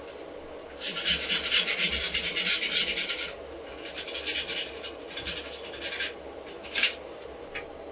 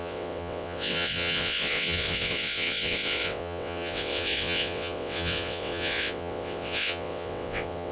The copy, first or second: second